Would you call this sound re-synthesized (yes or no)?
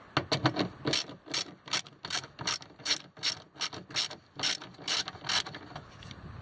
no